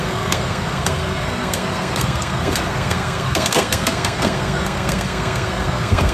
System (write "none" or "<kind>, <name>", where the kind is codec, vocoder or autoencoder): codec, SNAC